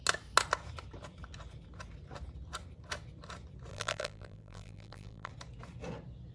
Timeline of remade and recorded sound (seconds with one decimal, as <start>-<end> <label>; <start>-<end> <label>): 0.0-3.7 recorded; 3.7-5.3 remade; 5.3-6.3 recorded

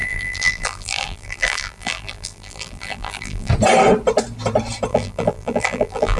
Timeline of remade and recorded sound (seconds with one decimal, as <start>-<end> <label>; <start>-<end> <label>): 0.0-3.5 remade; 3.5-4.9 recorded; 4.9-6.2 remade

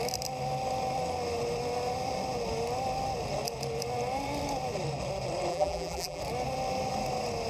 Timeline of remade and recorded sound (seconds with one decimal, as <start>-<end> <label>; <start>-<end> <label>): 0.0-5.5 recorded; 5.5-6.2 remade; 6.2-7.5 recorded

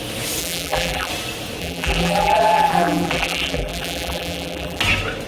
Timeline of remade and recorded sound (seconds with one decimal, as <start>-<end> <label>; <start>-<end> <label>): 0.0-0.4 recorded; 0.4-1.1 remade; 1.1-1.6 recorded; 1.6-4.8 remade; 4.8-5.3 recorded

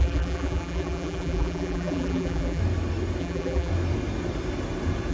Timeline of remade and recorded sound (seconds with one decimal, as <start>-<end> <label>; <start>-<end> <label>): 0.0-2.6 remade; 2.6-3.2 recorded; 3.2-3.7 remade; 3.7-5.1 recorded

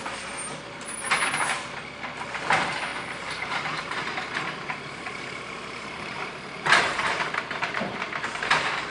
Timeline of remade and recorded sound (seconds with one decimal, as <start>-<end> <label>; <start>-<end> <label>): 0.0-2.9 recorded; 2.9-8.0 remade; 8.0-8.9 recorded

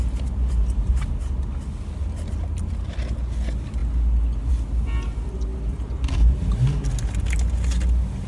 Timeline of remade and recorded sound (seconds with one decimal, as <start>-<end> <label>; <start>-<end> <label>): 0.0-8.3 recorded